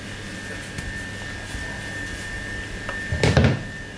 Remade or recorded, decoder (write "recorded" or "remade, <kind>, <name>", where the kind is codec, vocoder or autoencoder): recorded